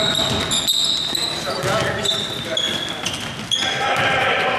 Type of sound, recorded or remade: recorded